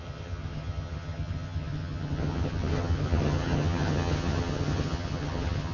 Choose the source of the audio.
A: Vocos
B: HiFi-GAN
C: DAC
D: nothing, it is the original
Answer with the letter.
B